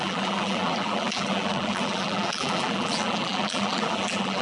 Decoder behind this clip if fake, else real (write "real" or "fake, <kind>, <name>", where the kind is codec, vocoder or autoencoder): fake, vocoder, BigVGAN v2